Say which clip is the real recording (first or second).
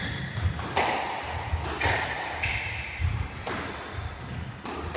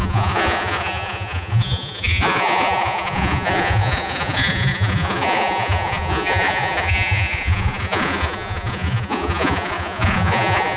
first